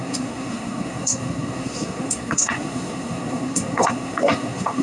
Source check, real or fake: fake